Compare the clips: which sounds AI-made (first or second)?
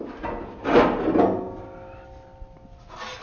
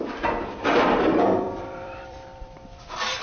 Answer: second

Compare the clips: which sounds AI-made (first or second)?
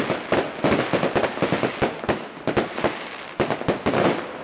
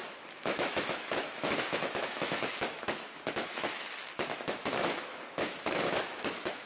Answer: second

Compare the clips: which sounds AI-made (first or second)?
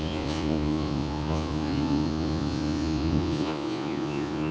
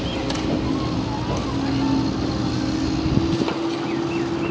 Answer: first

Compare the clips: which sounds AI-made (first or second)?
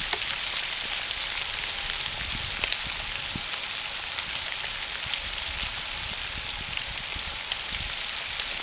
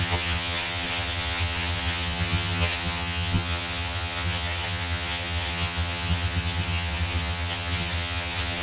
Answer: second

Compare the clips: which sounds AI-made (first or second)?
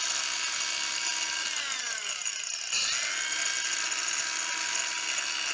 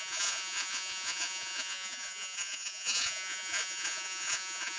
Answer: second